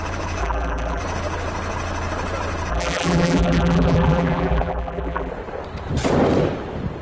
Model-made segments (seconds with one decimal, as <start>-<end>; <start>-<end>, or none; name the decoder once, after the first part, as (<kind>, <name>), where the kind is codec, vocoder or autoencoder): 0.4-1.0 (vocoder, BigVGAN v2); 2.7-5.3